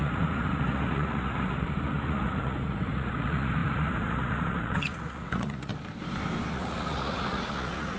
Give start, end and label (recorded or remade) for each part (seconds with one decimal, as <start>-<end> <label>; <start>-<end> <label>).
0.0-5.7 remade; 5.7-6.5 recorded; 6.5-8.0 remade